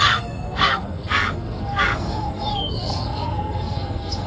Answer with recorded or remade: remade